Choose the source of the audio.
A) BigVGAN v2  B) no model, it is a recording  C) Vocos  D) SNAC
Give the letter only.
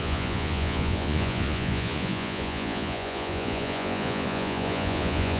C